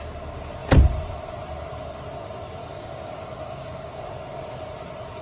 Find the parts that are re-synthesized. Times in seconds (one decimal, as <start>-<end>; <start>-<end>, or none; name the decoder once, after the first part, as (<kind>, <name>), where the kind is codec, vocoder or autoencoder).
2.6-4.1 (codec, DAC)